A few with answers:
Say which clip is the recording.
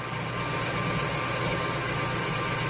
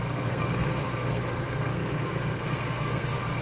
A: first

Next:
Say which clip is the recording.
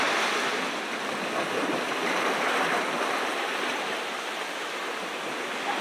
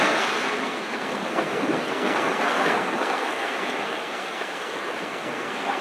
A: first